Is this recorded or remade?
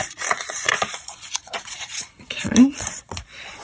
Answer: remade